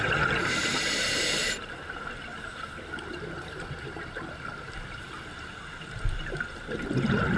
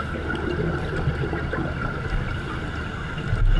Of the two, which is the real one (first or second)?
second